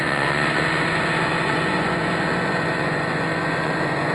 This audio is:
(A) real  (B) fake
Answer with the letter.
B